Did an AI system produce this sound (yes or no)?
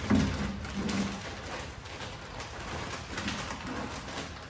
no